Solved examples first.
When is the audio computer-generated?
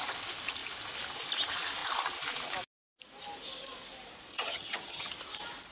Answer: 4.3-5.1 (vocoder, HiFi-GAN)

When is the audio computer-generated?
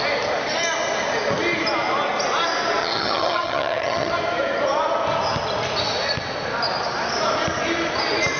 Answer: 2.8-4.1 (vocoder, HiFi-GAN)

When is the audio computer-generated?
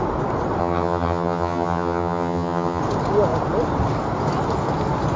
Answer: 0.6-2.8 (vocoder, HiFi-GAN)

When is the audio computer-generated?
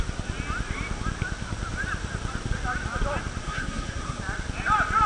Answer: 3.4-4.2 (codec, SNAC)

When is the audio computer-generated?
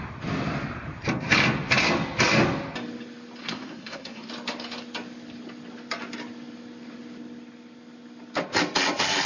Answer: 3.4-4.3 (codec, SNAC)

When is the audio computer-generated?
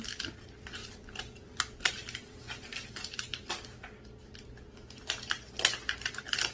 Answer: none